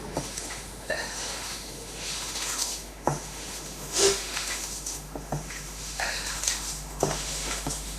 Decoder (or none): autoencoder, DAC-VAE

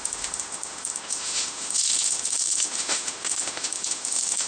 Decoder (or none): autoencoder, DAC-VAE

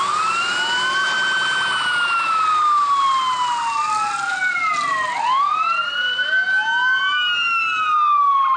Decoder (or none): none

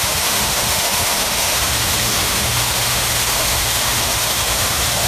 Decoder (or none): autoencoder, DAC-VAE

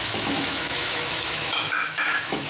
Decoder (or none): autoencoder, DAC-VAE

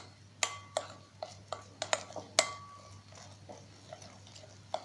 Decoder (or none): none